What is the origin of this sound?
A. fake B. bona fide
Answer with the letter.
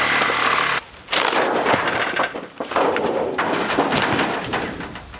B